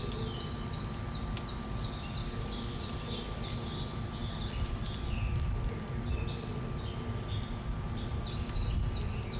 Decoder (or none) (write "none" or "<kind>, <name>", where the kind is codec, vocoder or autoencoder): none